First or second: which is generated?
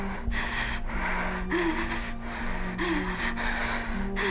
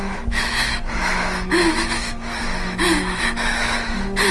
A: second